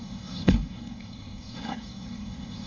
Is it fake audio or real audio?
fake